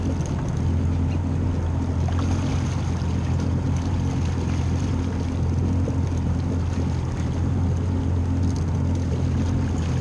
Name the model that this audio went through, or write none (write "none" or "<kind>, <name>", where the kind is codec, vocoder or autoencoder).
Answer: none